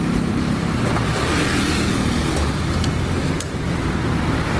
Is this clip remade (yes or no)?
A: no